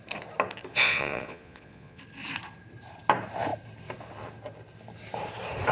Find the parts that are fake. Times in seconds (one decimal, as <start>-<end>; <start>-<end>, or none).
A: 0.7-2.0